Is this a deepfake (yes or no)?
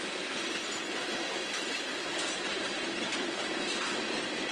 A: no